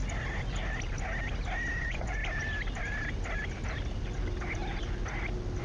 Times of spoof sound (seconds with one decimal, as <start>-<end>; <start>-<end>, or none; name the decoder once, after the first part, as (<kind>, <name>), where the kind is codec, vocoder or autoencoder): 1.8-2.2 (vocoder, Vocos)